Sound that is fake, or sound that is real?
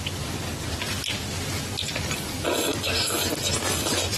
real